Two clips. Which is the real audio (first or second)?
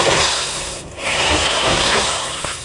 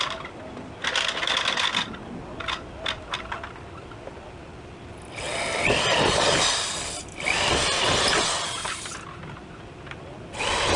second